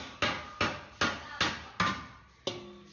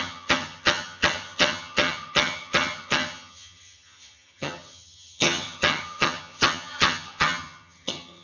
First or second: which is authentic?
first